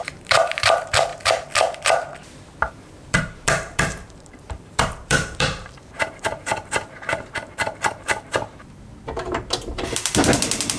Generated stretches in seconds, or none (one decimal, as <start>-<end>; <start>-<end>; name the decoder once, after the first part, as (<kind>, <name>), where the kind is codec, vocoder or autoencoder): 0.0-1.1 (vocoder, BigVGAN v2); 2.7-10.8